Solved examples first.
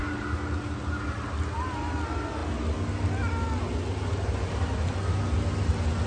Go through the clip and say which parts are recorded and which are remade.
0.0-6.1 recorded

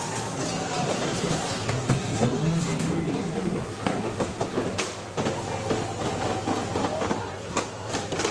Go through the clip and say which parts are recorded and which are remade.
0.0-0.9 recorded; 0.9-2.6 remade; 2.6-3.1 recorded; 3.1-4.6 remade; 4.6-7.2 recorded; 7.2-7.9 remade; 7.9-8.3 recorded

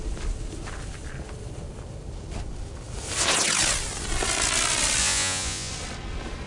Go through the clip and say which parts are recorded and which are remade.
0.0-5.0 recorded; 5.0-5.7 remade; 5.7-6.5 recorded

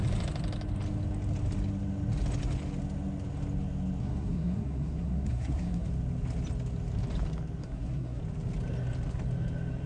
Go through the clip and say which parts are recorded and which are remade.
0.0-4.0 recorded; 4.0-5.9 remade; 5.9-7.6 recorded; 7.6-8.2 remade; 8.2-9.9 recorded

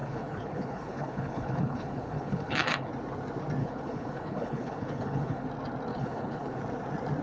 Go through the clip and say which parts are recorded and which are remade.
0.0-2.9 remade; 2.9-3.6 recorded; 3.6-5.5 remade; 5.5-5.9 recorded; 5.9-6.6 remade; 6.6-7.2 recorded